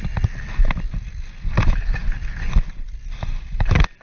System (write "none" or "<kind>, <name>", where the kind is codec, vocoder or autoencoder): none